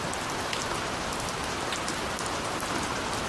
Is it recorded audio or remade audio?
recorded